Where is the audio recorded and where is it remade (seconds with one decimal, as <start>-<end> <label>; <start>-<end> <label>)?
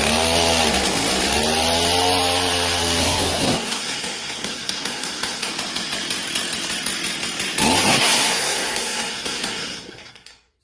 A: 0.0-3.0 recorded; 3.0-5.5 remade; 5.5-7.9 recorded; 7.9-10.6 remade